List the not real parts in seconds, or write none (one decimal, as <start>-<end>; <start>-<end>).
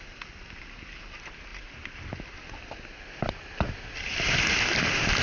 none